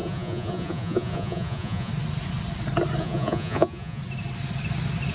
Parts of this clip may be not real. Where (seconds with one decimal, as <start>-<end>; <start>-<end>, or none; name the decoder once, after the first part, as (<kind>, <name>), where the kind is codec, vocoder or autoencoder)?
0.0-1.9 (vocoder, Vocos); 3.0-4.0

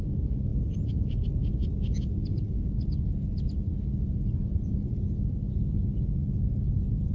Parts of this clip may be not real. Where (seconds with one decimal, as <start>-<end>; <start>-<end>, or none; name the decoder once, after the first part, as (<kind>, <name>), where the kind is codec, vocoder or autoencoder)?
none